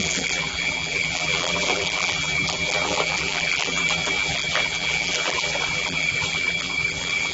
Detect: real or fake fake